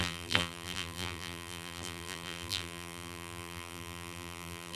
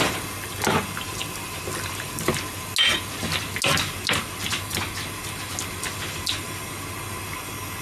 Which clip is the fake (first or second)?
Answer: first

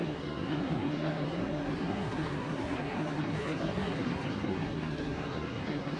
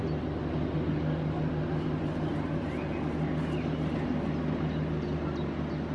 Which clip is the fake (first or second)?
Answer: first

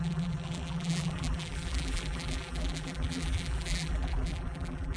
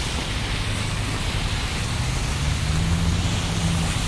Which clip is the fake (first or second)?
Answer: first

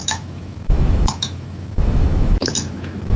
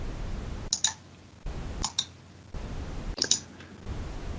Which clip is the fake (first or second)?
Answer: first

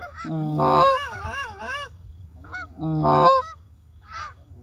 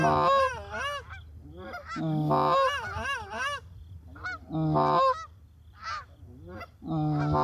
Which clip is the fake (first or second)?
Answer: first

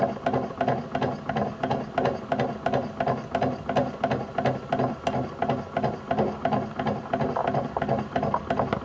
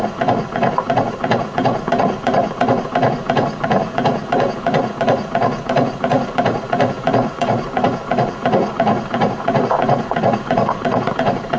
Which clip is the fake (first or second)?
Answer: second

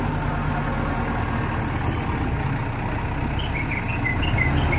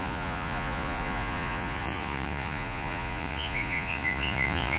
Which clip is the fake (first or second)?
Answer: second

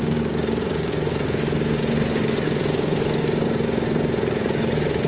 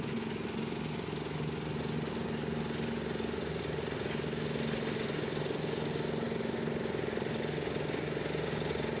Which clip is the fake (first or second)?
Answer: first